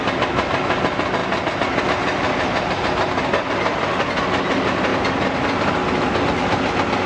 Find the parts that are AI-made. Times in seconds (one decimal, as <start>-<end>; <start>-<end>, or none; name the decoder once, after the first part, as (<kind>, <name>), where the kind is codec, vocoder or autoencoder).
none